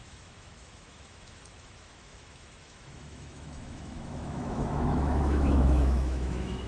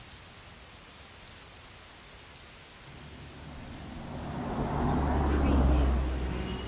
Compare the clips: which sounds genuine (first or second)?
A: second